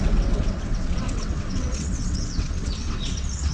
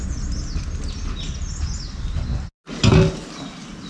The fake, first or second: first